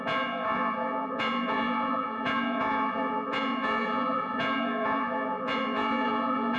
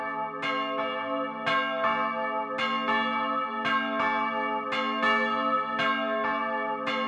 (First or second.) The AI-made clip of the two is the first